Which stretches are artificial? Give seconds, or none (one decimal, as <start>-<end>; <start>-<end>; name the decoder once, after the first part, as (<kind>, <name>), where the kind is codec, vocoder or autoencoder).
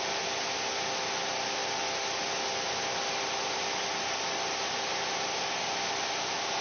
none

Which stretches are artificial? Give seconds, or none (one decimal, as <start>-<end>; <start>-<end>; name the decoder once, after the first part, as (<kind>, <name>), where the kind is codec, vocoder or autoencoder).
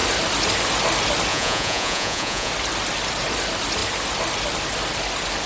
1.3-2.5 (vocoder, Vocos)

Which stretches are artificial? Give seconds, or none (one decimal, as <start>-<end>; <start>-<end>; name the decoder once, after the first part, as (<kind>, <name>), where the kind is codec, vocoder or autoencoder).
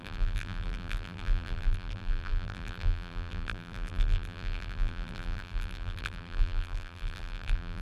0.0-7.8 (vocoder, BigVGAN v2)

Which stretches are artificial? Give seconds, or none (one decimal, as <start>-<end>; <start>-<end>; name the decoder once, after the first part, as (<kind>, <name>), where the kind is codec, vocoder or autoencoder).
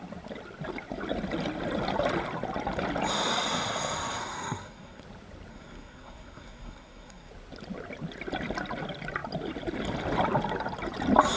4.2-5.0 (codec, SNAC); 5.5-7.3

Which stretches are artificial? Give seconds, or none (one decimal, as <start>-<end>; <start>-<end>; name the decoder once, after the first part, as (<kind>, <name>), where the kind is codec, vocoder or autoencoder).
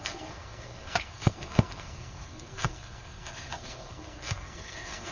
0.0-5.1 (codec, SNAC)